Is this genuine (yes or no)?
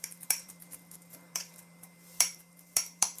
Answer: no